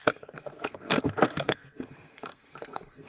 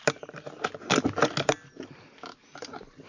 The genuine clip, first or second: second